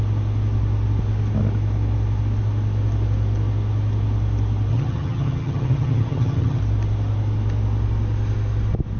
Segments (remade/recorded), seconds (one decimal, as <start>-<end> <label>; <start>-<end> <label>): 0.0-4.7 recorded; 4.7-6.6 remade; 6.6-9.0 recorded